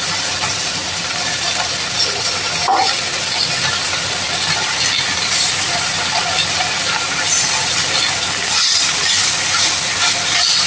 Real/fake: real